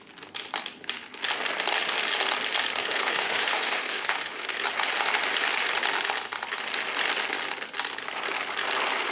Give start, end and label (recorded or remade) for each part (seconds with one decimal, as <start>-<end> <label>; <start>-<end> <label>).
0.0-2.8 recorded; 2.8-4.5 remade; 4.5-9.1 recorded